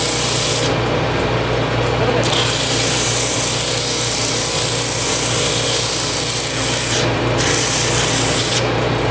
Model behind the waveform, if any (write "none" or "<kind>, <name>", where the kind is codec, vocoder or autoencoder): none